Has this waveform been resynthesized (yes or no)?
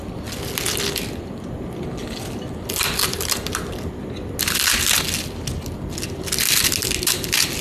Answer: no